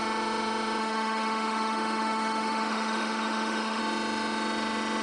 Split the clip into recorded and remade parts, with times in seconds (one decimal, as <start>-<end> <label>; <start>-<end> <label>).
0.0-0.8 recorded; 0.8-3.8 remade; 3.8-5.0 recorded